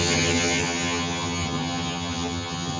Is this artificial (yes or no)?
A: yes